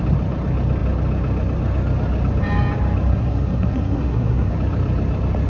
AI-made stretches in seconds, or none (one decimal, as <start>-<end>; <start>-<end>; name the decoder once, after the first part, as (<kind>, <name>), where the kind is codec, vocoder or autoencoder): 3.1-4.5 (codec, SNAC)